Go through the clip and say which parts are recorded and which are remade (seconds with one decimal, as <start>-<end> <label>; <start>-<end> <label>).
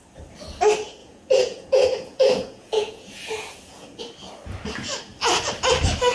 0.0-1.0 recorded; 1.0-4.0 remade; 4.0-6.1 recorded